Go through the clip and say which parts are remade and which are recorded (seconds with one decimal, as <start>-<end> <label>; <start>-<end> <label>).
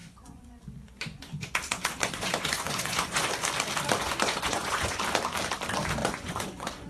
0.0-3.3 remade; 3.3-4.0 recorded; 4.0-5.0 remade; 5.0-6.0 recorded; 6.0-6.9 remade